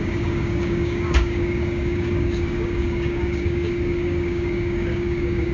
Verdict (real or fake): fake